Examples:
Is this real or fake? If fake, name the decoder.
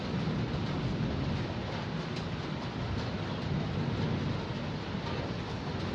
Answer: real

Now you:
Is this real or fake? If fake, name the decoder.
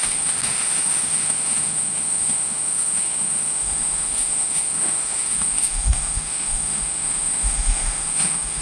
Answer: fake, autoencoder, DAC-VAE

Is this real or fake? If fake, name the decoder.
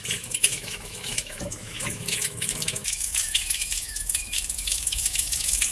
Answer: fake, autoencoder, DAC-VAE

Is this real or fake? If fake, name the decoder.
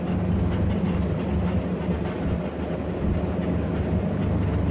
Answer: real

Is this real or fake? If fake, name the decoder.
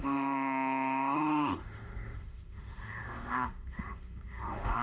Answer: fake, autoencoder, DAC-VAE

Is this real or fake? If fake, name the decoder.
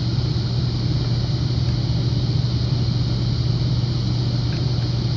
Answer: real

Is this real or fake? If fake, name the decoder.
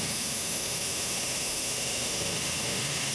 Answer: fake, autoencoder, DAC-VAE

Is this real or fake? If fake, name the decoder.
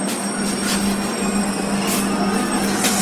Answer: real